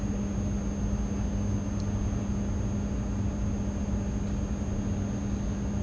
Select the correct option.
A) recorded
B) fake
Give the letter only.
A